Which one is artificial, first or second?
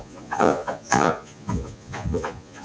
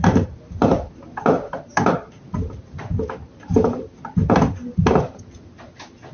first